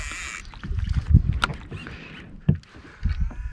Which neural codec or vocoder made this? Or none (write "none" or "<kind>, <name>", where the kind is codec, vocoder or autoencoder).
none